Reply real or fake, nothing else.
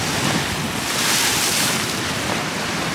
real